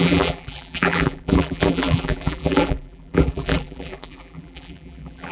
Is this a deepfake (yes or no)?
yes